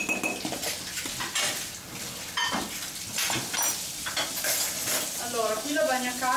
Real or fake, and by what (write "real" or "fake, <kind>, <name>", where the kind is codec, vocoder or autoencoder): real